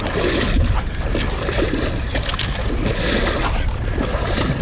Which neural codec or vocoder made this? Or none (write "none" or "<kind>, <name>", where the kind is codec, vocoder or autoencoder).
none